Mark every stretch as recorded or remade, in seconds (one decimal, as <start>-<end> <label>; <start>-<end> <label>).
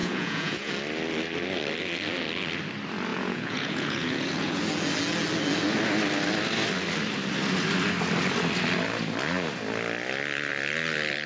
0.0-0.7 remade; 0.7-3.1 recorded; 3.1-4.6 remade; 4.6-11.3 recorded